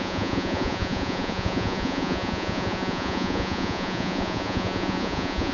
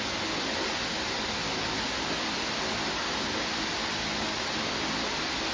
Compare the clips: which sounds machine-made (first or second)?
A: first